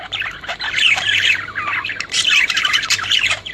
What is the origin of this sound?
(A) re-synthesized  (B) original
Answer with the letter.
A